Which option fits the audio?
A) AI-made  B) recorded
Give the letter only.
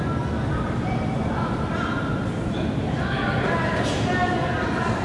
B